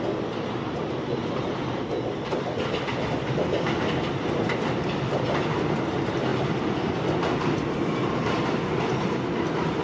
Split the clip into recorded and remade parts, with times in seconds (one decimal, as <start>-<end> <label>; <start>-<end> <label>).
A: 0.0-1.2 remade; 1.2-2.8 recorded; 2.8-6.3 remade; 6.3-9.8 recorded